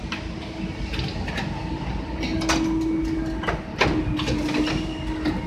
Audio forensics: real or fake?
real